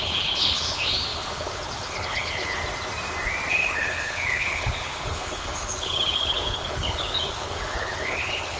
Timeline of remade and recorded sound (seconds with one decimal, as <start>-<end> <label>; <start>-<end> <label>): 0.0-2.6 remade; 2.6-3.5 recorded; 3.5-8.6 remade